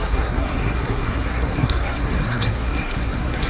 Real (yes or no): no